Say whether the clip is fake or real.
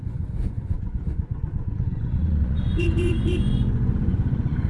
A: fake